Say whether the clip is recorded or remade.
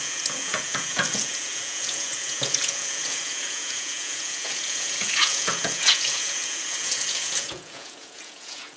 remade